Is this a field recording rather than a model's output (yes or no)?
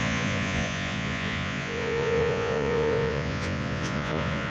no